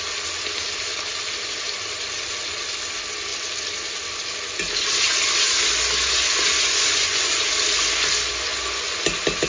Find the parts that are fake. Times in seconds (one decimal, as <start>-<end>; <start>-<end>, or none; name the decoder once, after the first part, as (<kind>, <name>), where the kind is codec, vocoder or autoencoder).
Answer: 6.5-7.4 (vocoder, Vocos); 8.5-9.0